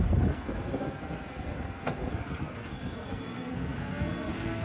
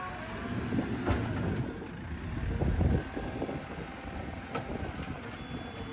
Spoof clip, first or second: first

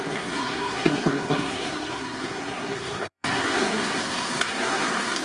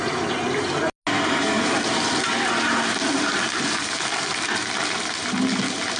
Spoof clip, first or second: first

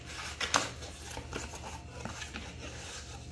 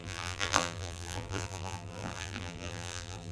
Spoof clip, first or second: second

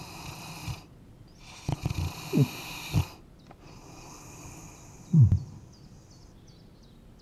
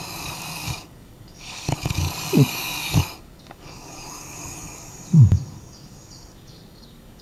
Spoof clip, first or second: second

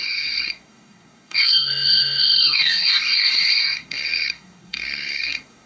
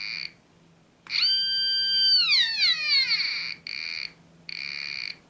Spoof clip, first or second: first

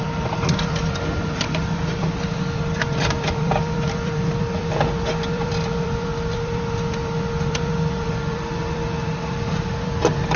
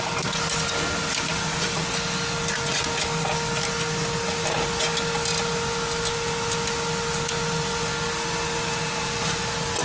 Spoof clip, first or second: first